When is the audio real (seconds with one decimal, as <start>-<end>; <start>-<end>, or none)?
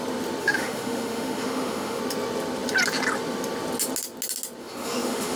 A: 0.0-0.4; 2.0-4.6